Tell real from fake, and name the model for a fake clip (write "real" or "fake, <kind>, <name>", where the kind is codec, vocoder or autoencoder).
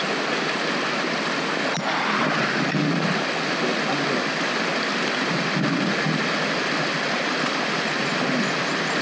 real